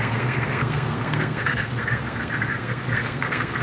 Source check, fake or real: fake